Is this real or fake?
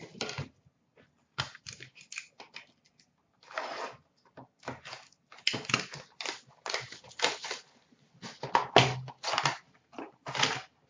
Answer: real